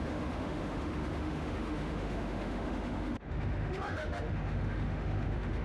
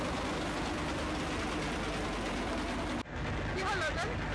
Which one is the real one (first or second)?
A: second